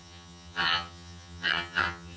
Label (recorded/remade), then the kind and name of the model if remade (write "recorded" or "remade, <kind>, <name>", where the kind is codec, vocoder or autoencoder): remade, vocoder, HiFi-GAN